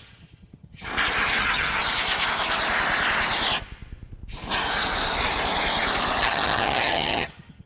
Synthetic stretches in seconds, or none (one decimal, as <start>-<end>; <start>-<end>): 0.0-0.9; 1.4-1.8; 6.2-7.7